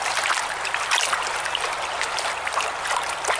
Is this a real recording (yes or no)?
yes